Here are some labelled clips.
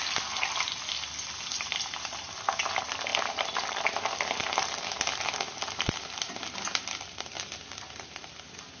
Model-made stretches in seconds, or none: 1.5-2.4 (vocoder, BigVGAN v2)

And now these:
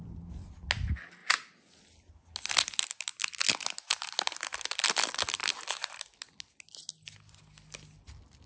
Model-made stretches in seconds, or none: none

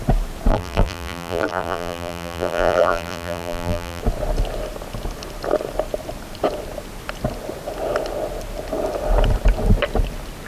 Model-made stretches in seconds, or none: 0.5-4.0 (vocoder, BigVGAN v2)

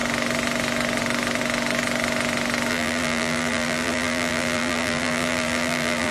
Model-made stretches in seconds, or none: 2.7-6.1 (vocoder, BigVGAN v2)

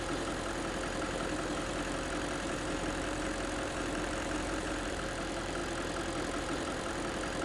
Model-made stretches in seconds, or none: 0.0-5.6 (vocoder, BigVGAN v2); 6.4-7.4